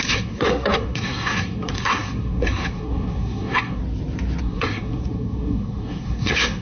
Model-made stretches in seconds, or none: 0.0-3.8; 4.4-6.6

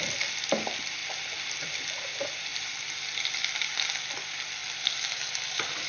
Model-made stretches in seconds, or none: none

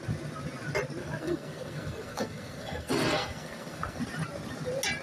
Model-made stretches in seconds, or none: 1.0-4.0

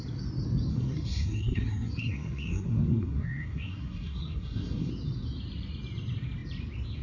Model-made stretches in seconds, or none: 0.7-4.9

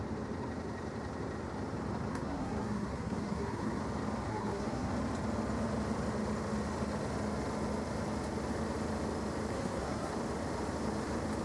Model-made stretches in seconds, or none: 2.1-3.8; 4.3-4.9; 9.5-10.1

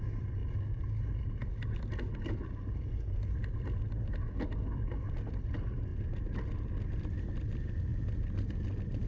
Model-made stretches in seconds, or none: none

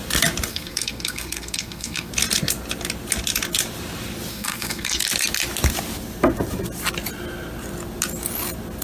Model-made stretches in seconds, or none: 0.5-2.1; 4.3-5.0

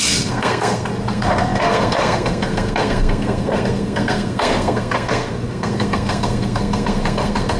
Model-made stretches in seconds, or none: 0.0-7.6